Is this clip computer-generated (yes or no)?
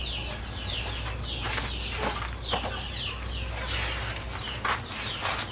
no